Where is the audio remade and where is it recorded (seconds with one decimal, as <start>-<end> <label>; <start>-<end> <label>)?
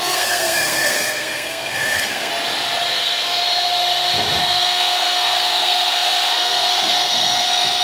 0.0-2.3 remade; 2.3-2.9 recorded; 2.9-3.4 remade; 3.4-4.4 recorded; 4.4-7.8 remade